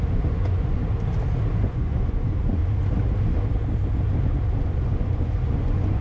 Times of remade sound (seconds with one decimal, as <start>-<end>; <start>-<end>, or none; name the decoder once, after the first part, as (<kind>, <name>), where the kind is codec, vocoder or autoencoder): 0.0-0.8 (vocoder, Vocos); 1.5-2.6; 4.6-6.0